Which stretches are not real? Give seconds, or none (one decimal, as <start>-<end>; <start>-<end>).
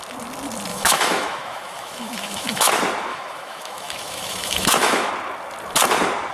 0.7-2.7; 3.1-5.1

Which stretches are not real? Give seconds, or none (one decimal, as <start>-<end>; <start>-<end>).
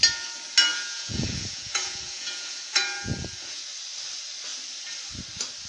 0.7-3.6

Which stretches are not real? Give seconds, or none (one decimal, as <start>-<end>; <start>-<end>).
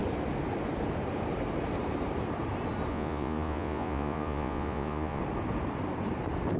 2.9-5.2